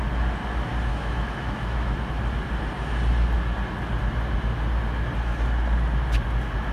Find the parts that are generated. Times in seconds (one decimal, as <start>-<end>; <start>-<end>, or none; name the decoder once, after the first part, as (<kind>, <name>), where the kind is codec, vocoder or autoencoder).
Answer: 0.9-2.0 (autoencoder, DAC-VAE)